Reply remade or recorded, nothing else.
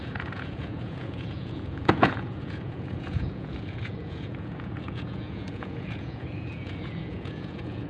remade